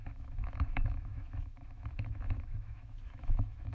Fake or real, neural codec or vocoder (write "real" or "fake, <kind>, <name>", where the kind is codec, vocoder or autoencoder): fake, autoencoder, DAC-VAE